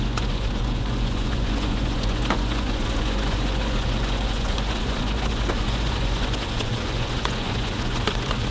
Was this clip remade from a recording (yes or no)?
yes